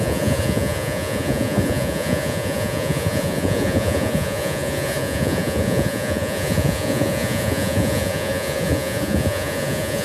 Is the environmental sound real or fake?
fake